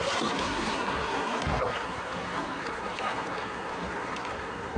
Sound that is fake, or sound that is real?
fake